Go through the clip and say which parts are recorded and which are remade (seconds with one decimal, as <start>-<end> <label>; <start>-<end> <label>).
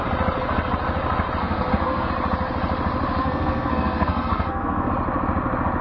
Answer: 0.0-1.4 recorded; 1.4-2.1 remade; 2.1-3.2 recorded; 3.2-4.9 remade; 4.9-5.8 recorded